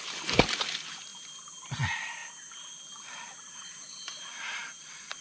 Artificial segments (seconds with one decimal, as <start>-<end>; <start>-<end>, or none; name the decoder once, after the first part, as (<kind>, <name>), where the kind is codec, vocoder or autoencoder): 0.0-1.1 (vocoder, BigVGAN v2); 1.7-2.2; 2.9-5.2

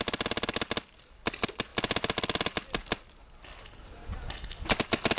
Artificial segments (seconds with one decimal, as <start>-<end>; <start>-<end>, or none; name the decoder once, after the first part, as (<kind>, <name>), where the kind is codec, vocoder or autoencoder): none

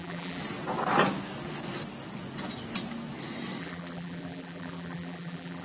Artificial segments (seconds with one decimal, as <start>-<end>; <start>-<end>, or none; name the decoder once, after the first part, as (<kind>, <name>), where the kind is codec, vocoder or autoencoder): 0.0-0.4 (vocoder, BigVGAN v2); 3.6-5.6

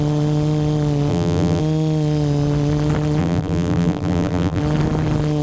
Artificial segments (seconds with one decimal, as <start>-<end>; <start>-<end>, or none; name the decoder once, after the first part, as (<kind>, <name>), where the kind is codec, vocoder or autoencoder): 1.1-1.6 (vocoder, BigVGAN v2); 3.2-4.6

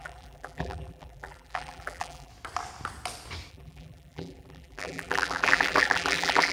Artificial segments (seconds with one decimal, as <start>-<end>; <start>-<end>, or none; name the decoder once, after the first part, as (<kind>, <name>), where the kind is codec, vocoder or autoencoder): 0.0-2.3 (vocoder, BigVGAN v2); 3.5-6.5

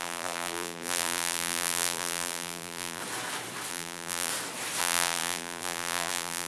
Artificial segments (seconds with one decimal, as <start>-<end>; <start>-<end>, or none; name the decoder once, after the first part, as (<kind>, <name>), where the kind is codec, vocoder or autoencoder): 0.0-3.0 (vocoder, BigVGAN v2); 3.7-4.3; 4.8-6.5

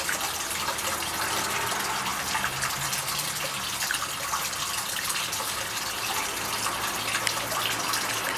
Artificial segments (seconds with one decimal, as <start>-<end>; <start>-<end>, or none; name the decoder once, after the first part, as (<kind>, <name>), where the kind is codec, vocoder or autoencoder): none